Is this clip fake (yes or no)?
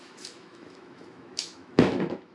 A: yes